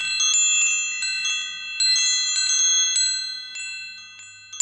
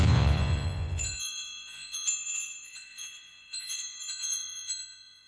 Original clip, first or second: first